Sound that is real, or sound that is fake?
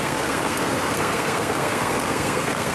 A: fake